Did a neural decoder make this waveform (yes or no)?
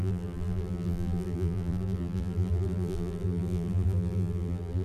yes